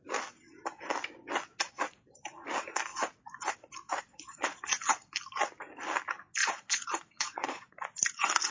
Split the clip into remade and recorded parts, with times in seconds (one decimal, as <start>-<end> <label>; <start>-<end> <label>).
0.0-4.1 recorded; 4.1-4.6 remade; 4.6-6.4 recorded; 6.4-7.7 remade; 7.7-8.5 recorded